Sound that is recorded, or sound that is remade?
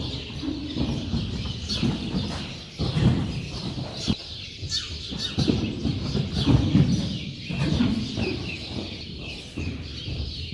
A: recorded